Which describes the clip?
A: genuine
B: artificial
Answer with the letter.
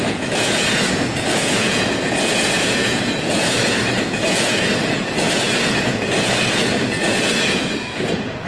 B